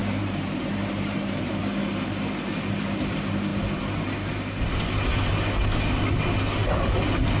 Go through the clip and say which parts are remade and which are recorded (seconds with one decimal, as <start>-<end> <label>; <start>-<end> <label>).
0.0-1.6 remade; 1.6-7.4 recorded